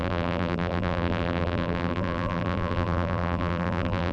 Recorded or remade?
remade